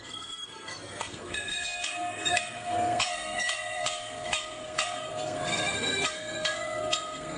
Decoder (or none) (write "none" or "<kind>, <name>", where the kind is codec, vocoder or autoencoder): codec, SNAC